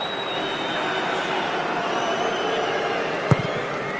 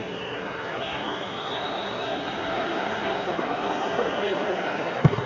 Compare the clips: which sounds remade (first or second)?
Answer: second